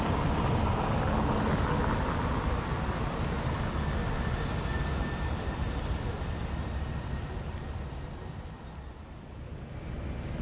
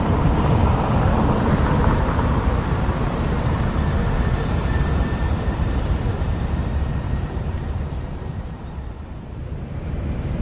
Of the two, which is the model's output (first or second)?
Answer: second